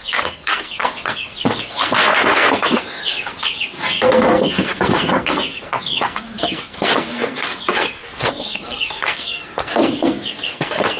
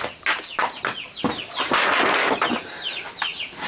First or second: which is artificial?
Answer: first